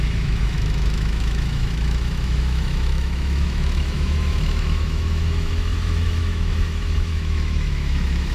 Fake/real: fake